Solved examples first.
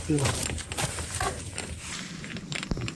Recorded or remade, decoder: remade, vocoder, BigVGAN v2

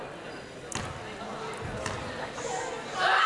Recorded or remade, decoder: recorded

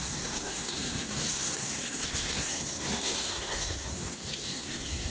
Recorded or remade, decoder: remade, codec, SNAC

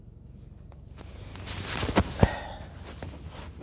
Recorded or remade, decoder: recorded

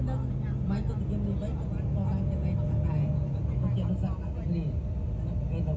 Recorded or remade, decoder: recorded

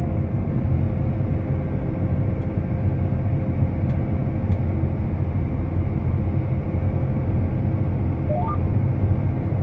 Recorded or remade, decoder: recorded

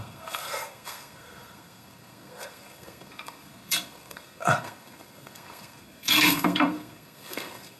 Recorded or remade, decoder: remade, codec, SNAC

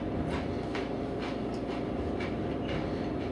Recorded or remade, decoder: recorded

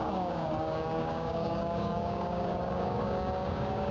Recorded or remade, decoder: remade, codec, DAC